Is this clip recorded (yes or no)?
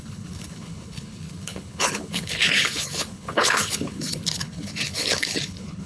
no